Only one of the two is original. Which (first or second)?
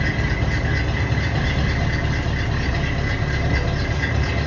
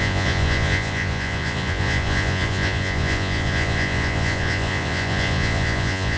first